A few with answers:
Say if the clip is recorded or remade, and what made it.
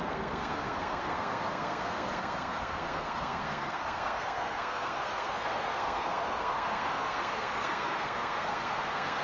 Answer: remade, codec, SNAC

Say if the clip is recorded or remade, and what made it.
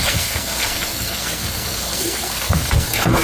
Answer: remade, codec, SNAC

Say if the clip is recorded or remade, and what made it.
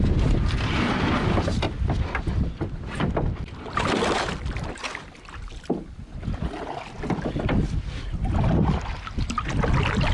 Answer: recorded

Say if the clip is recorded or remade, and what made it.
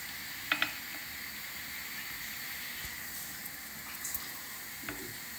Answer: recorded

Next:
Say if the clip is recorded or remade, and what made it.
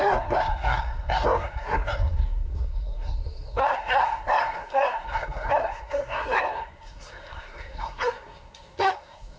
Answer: remade, codec, SNAC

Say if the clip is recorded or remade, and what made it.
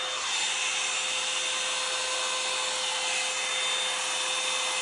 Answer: recorded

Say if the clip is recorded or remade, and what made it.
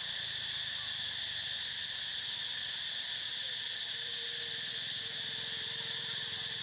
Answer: recorded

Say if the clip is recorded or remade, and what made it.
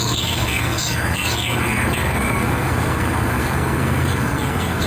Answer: remade, codec, SNAC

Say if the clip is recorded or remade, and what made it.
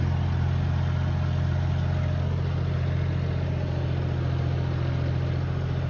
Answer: recorded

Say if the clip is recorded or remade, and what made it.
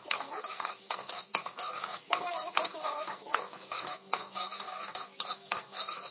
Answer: remade, codec, SNAC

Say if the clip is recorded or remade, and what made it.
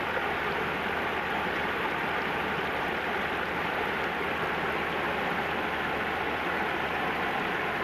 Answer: recorded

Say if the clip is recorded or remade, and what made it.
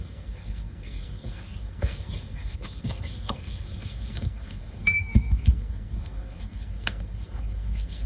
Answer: remade, codec, SNAC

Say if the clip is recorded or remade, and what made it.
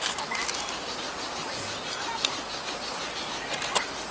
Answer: recorded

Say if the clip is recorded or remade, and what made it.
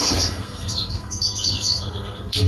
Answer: remade, codec, SNAC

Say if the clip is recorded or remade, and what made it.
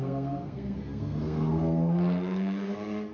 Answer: remade, codec, SNAC